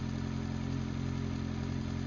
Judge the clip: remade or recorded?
recorded